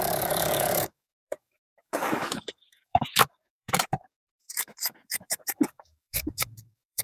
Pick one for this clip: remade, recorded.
remade